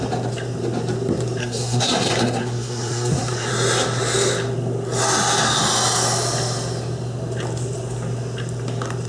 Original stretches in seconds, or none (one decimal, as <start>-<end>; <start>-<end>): 0.0-1.4; 3.5-9.1

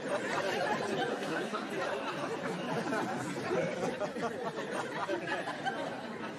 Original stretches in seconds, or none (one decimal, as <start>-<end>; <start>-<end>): 0.0-1.1; 1.7-6.4

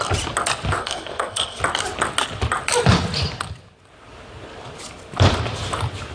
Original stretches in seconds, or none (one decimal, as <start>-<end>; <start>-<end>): 0.0-0.8; 1.6-6.1